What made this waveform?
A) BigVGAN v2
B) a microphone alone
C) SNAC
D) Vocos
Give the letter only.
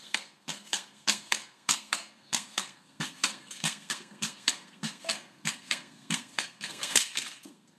C